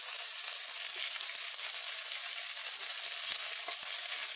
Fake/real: real